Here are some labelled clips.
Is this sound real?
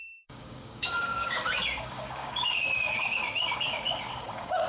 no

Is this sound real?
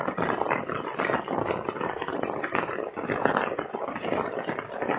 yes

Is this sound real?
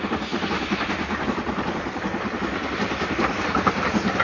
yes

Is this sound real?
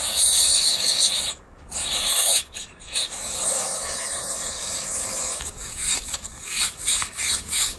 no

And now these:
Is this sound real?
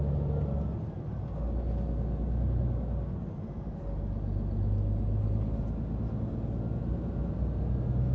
yes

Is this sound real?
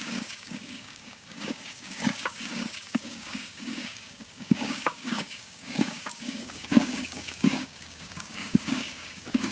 no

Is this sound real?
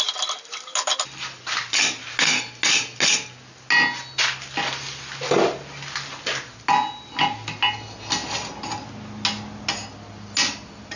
yes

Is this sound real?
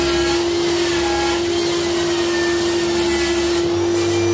yes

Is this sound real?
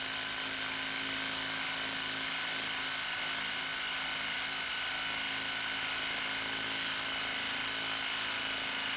yes